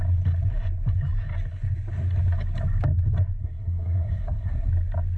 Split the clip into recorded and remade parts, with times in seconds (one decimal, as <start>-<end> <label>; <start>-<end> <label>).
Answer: 0.0-3.4 recorded; 3.4-4.7 remade; 4.7-5.2 recorded